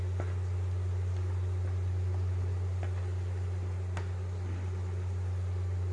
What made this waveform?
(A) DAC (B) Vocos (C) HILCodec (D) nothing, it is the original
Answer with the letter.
D